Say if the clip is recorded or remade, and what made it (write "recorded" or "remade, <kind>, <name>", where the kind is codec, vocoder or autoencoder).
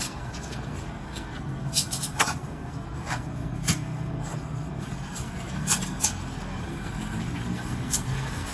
remade, codec, SNAC